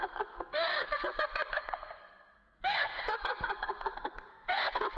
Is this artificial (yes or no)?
yes